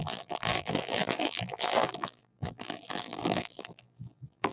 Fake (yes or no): yes